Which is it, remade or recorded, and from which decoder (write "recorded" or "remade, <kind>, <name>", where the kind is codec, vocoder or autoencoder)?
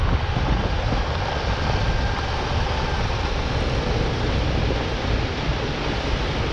recorded